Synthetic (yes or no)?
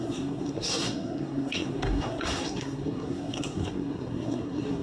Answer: yes